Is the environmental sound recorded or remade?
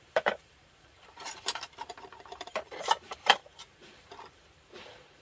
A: remade